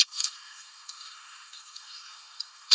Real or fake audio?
fake